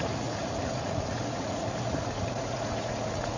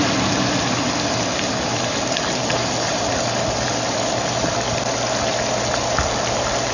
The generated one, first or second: first